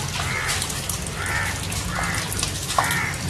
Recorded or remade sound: recorded